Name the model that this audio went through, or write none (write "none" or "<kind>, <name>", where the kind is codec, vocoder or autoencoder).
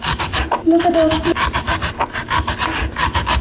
none